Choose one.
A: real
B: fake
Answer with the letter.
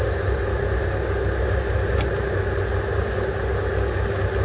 A